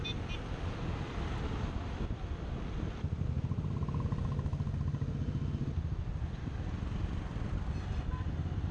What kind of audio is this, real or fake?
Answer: real